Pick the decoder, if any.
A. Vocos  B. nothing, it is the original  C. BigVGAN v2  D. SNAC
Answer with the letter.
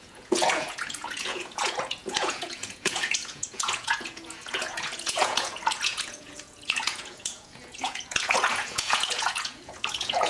A